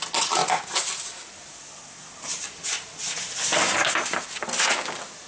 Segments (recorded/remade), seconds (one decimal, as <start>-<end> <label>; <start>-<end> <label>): 0.0-5.3 recorded

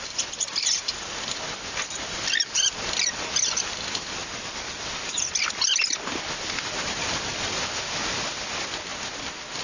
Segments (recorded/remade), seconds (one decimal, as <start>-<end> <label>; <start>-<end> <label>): 0.0-9.6 recorded

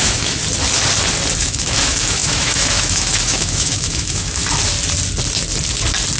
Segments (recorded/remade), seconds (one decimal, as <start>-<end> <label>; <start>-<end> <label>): 0.0-0.4 remade; 0.4-1.4 recorded; 1.4-4.4 remade; 4.4-6.2 recorded

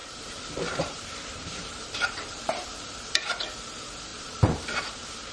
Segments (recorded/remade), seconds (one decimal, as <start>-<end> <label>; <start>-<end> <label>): 0.0-3.2 remade; 3.2-4.1 recorded; 4.1-4.8 remade; 4.8-5.3 recorded

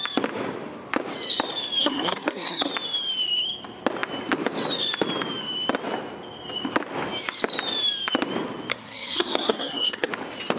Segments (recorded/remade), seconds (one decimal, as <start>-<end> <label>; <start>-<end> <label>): 0.0-1.8 recorded; 1.8-2.7 remade; 2.7-8.7 recorded; 8.7-10.1 remade; 10.1-10.6 recorded

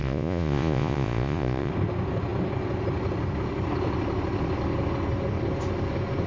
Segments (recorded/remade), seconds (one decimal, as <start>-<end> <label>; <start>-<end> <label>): 0.0-1.7 remade; 1.7-6.3 recorded

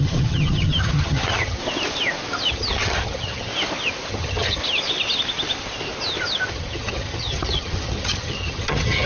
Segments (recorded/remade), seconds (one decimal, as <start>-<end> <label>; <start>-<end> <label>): 0.0-1.6 remade; 1.6-2.5 recorded; 2.5-3.5 remade; 3.5-4.1 recorded; 4.1-4.6 remade; 4.6-6.5 recorded; 6.5-9.1 remade